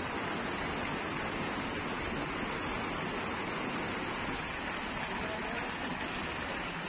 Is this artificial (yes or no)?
no